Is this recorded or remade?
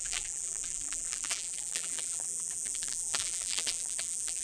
remade